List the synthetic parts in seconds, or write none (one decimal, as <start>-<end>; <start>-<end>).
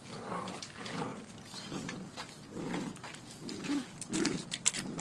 none